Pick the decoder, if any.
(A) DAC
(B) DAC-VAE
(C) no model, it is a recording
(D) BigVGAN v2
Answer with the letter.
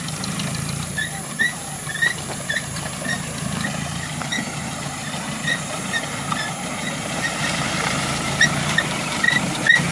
D